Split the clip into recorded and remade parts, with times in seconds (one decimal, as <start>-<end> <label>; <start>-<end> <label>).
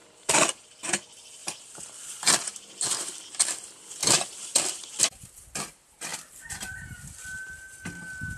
0.0-4.0 recorded; 4.0-5.0 remade; 5.0-8.4 recorded